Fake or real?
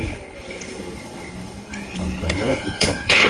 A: fake